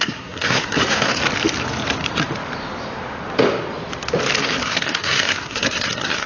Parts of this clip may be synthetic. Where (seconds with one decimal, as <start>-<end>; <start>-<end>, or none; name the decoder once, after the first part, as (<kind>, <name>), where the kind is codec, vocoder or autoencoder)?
0.0-1.2 (codec, SNAC); 4.4-6.3

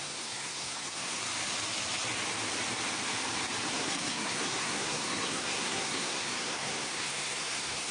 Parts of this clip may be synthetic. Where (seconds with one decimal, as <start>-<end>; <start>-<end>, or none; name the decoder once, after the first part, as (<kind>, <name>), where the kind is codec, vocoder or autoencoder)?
0.0-1.2 (codec, SNAC); 3.7-7.9

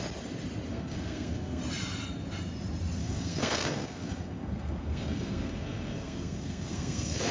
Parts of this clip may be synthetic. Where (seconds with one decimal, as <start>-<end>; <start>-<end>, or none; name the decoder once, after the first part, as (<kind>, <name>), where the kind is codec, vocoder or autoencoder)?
0.7-1.6 (codec, SNAC); 3.0-7.3

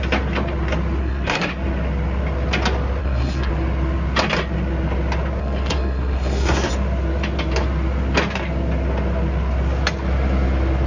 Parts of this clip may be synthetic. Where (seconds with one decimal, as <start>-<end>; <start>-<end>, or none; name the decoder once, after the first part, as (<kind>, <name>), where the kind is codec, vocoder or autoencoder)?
1.0-1.5 (codec, SNAC); 3.0-3.5; 5.4-6.7